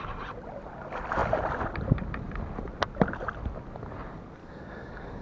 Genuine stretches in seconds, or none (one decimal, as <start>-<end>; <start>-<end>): 0.0-4.4